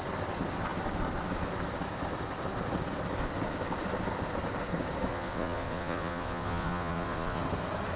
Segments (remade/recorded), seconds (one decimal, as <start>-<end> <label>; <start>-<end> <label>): 0.0-5.1 recorded; 5.1-7.4 remade; 7.4-8.0 recorded